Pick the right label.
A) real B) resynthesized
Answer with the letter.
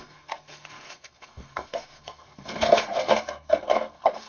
B